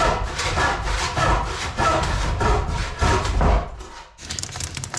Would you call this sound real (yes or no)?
yes